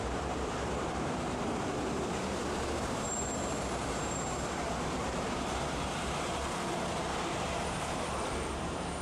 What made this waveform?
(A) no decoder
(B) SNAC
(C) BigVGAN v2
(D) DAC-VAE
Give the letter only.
C